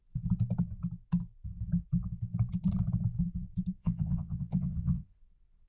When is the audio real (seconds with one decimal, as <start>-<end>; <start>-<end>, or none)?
0.0-3.8; 5.2-5.7